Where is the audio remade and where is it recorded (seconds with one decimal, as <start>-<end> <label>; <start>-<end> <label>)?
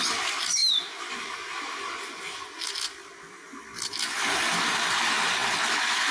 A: 0.0-0.6 recorded; 0.6-2.7 remade; 2.7-6.1 recorded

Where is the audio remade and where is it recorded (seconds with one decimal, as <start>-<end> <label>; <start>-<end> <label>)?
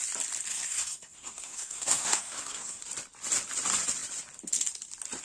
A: 0.0-0.5 recorded; 0.5-2.8 remade; 2.8-5.2 recorded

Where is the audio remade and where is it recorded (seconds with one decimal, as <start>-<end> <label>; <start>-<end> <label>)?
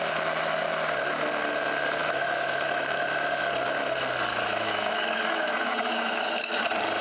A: 0.0-2.0 recorded; 2.0-3.1 remade; 3.1-4.3 recorded; 4.3-6.6 remade; 6.6-7.0 recorded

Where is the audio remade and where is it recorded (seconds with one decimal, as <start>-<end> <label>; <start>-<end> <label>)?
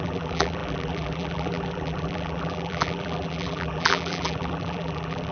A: 0.0-5.3 remade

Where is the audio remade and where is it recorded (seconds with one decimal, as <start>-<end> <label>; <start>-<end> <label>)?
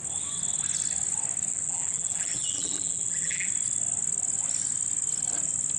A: 0.0-1.5 recorded; 1.5-3.5 remade; 3.5-5.8 recorded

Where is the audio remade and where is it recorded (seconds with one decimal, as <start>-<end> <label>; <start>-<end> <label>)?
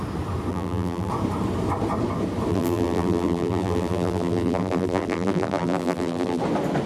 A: 0.0-0.5 recorded; 0.5-1.1 remade; 1.1-2.5 recorded; 2.5-6.4 remade; 6.4-6.9 recorded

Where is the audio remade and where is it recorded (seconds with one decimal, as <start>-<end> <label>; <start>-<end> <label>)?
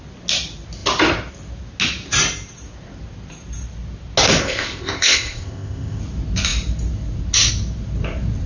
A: 0.0-4.4 recorded; 4.4-6.0 remade; 6.0-8.5 recorded